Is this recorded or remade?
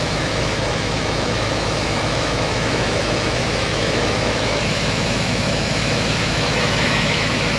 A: remade